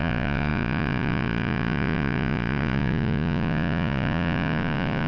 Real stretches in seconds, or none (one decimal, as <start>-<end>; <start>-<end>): none

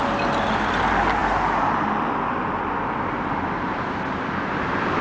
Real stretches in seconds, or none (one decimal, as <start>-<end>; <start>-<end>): 0.0-5.0

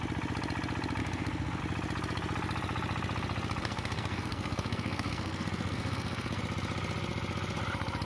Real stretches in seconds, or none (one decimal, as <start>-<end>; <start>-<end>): 0.0-1.0; 1.6-3.6; 6.4-8.1